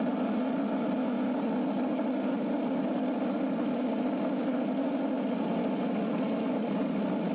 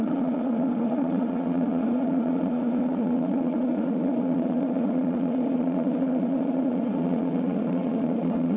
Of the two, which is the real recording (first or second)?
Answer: first